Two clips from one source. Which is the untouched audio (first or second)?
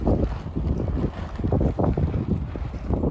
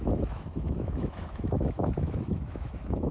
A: first